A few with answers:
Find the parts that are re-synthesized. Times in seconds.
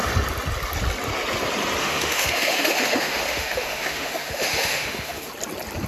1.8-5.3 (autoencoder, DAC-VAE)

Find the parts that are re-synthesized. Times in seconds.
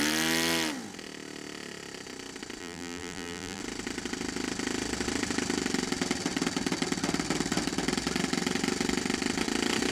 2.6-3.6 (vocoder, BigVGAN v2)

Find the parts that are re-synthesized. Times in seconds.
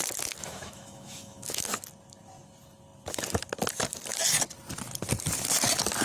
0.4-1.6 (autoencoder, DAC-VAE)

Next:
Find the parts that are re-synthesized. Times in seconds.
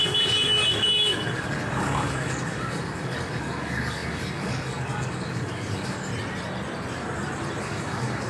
0.0-6.1 (codec, DAC); 7.6-8.3